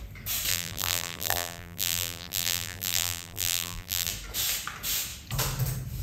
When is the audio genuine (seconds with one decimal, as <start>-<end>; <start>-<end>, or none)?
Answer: 0.0-0.5; 4.1-6.0